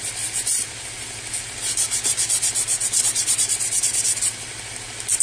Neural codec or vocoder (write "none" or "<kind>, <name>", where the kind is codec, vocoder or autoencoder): none